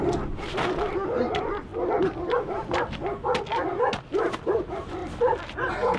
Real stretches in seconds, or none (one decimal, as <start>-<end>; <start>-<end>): 1.7-4.0; 5.0-6.0